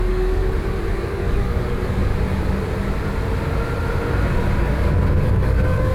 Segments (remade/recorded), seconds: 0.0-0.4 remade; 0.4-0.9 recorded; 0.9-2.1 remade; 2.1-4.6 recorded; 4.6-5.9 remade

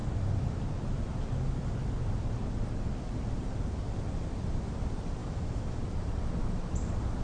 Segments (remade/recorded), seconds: 0.0-5.2 recorded; 5.2-5.8 remade; 5.8-7.2 recorded

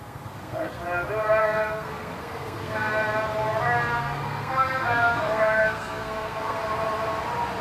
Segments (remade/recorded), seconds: 0.0-0.8 remade; 0.8-1.4 recorded; 1.4-2.9 remade; 2.9-4.0 recorded; 4.0-6.6 remade; 6.6-7.6 recorded

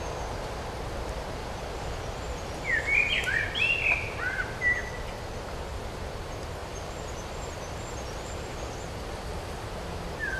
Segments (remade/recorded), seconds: 0.0-1.4 recorded; 1.4-2.8 remade; 2.8-6.6 recorded; 6.6-8.7 remade; 8.7-10.4 recorded

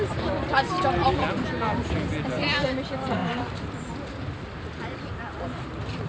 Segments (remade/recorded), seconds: 0.0-6.1 recorded

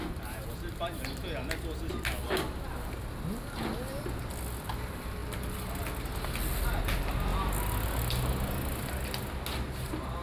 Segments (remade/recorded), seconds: 0.0-1.0 remade; 1.0-10.2 recorded